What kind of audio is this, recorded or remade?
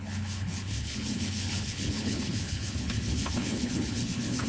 remade